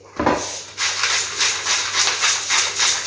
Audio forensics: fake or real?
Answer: real